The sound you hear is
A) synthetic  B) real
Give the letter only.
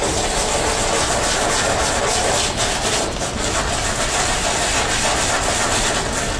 B